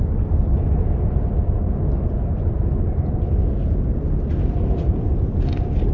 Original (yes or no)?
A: yes